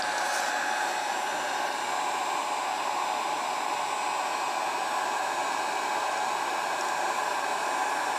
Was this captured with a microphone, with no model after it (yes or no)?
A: yes